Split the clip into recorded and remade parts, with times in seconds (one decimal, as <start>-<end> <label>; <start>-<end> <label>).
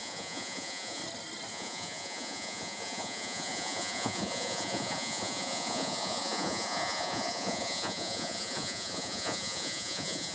0.0-1.0 remade; 1.0-1.5 recorded; 1.5-10.3 remade